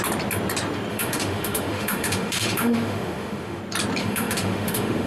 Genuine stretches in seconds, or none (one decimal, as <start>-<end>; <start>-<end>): 0.0-0.9; 3.6-4.0